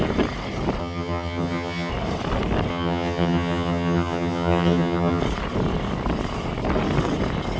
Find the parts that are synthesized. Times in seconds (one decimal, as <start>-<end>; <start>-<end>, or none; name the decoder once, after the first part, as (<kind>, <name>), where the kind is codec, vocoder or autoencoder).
0.8-1.9 (vocoder, HiFi-GAN); 2.7-5.2